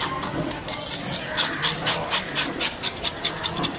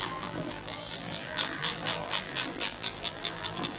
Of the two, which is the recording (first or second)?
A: first